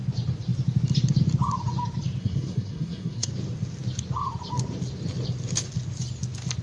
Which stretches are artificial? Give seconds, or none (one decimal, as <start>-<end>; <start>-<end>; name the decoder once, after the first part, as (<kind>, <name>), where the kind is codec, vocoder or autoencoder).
2.2-3.3 (codec, SNAC)